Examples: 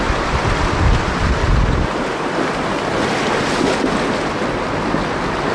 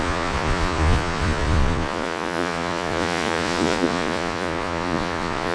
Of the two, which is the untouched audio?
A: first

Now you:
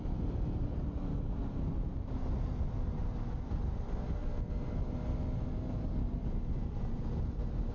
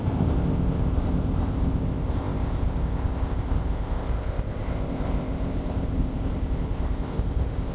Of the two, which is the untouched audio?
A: first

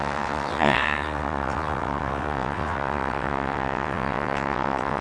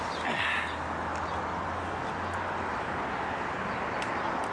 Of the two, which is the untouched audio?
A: second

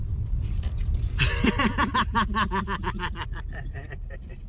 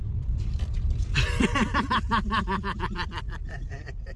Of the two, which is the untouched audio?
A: first